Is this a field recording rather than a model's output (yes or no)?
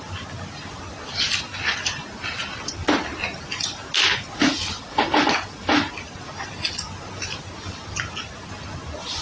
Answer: yes